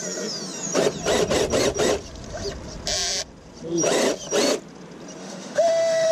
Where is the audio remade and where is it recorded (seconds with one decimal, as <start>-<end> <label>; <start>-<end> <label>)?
0.0-5.2 recorded; 5.2-6.1 remade